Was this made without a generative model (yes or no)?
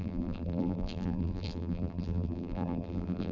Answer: no